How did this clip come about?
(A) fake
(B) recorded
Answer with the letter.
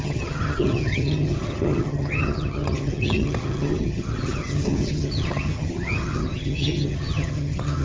A